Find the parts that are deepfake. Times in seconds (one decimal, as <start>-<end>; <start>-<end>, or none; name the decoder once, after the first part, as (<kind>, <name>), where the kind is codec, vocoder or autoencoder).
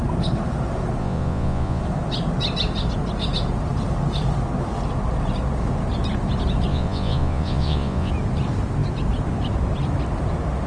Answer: 1.0-1.8 (vocoder, Vocos); 6.7-8.1